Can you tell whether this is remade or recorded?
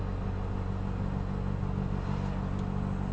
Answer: recorded